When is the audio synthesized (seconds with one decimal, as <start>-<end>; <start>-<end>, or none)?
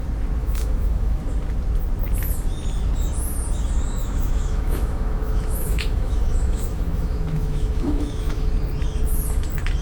0.4-1.2; 4.0-8.5